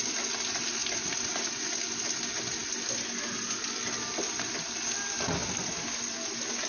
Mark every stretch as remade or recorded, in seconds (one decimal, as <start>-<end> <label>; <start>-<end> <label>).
0.0-6.7 recorded